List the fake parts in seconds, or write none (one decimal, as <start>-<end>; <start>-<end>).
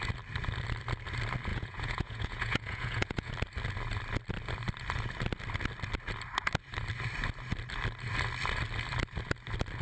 1.5-3.3